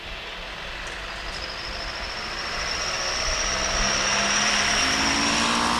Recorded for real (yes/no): yes